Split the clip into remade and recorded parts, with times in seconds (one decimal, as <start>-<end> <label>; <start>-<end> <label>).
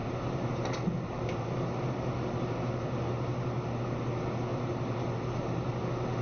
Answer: 0.0-1.9 remade; 1.9-4.5 recorded; 4.5-5.7 remade; 5.7-6.2 recorded